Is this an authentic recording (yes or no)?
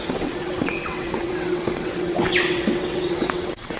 no